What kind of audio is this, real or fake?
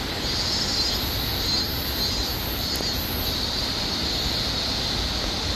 real